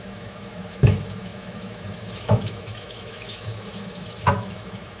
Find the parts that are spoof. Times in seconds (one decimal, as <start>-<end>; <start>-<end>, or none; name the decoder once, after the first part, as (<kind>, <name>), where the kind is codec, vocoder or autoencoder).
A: 0.0-5.0 (autoencoder, DAC-VAE)